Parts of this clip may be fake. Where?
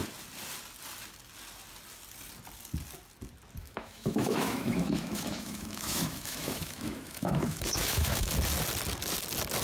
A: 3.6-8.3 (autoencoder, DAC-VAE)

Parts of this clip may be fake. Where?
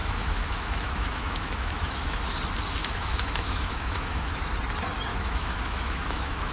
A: 0.0-2.2 (autoencoder, DAC-VAE); 2.8-4.5; 5.1-6.5